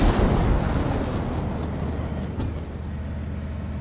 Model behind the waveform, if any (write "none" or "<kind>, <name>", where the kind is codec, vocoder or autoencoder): none